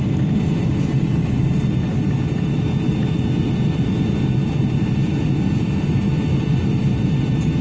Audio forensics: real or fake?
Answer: real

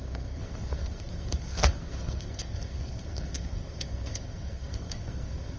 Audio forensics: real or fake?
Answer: fake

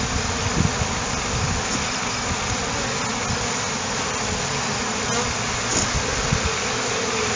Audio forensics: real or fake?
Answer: real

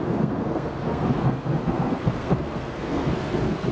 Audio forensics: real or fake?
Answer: fake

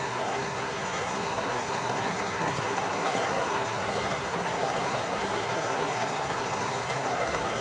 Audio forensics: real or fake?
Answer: fake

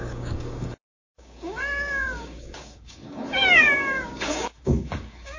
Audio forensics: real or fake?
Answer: fake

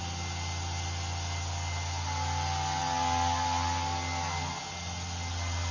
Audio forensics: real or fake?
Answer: real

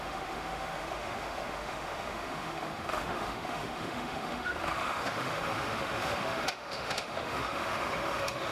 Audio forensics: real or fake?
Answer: fake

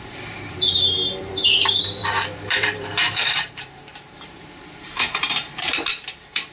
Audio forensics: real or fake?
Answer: fake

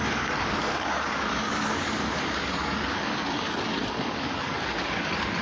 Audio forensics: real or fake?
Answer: fake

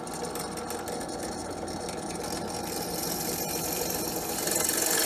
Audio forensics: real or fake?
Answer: real